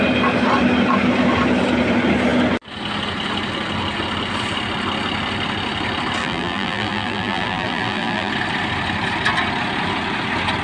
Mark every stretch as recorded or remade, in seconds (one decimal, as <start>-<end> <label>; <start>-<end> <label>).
0.0-6.2 recorded; 6.2-8.3 remade; 8.3-10.6 recorded